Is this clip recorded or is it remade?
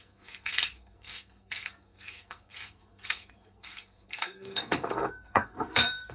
remade